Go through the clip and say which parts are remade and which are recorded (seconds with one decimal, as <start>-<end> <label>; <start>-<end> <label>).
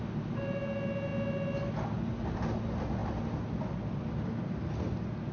0.0-5.3 recorded